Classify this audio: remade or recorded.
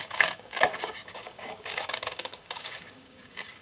remade